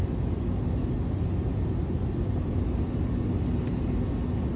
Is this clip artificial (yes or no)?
no